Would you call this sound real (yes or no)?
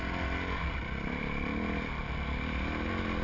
yes